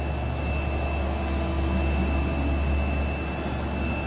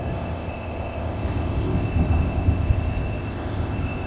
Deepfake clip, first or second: second